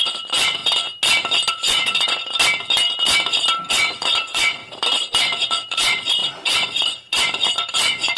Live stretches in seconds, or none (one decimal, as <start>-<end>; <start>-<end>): 0.6-1.5; 2.2-3.7; 4.6-5.2